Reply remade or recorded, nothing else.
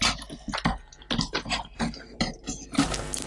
recorded